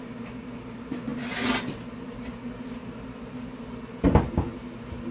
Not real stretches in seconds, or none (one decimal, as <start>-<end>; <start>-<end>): none